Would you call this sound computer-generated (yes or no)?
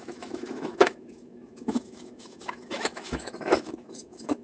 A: yes